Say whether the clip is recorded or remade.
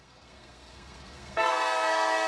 remade